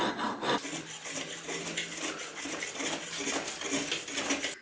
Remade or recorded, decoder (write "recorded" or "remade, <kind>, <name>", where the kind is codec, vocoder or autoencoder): recorded